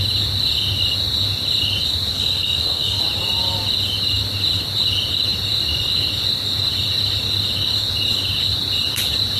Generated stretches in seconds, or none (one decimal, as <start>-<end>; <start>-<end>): 2.1-3.0